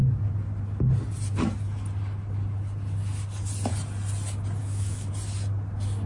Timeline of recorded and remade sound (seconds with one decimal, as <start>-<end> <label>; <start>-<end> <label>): 0.0-4.6 recorded; 4.6-5.1 remade; 5.1-6.1 recorded